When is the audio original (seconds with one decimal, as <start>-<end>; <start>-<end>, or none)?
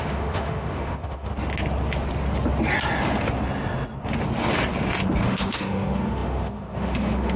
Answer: 1.3-5.2